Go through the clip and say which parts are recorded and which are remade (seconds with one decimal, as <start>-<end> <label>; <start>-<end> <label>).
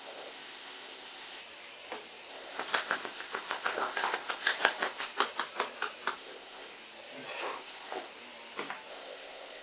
0.0-1.4 remade; 1.4-2.3 recorded; 2.3-5.1 remade; 5.1-6.1 recorded; 6.1-6.8 remade; 6.8-7.4 recorded; 7.4-8.1 remade; 8.1-8.9 recorded; 8.9-9.6 remade